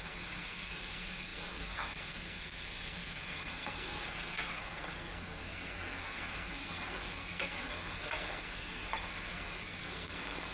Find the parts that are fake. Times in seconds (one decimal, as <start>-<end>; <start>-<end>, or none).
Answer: 0.0-10.5